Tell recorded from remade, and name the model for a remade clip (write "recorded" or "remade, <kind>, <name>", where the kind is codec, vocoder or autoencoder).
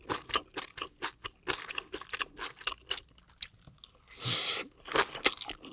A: recorded